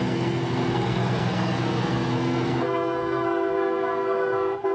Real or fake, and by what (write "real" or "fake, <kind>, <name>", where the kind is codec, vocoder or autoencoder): fake, codec, SNAC